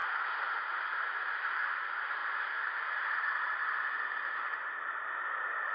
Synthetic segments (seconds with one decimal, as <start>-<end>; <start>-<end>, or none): none